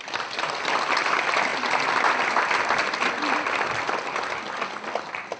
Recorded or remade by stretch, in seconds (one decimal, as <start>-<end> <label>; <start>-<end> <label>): 0.0-5.4 recorded